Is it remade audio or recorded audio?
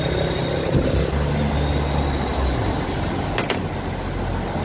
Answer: recorded